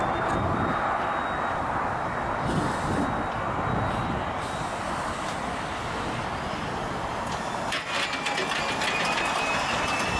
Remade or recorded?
recorded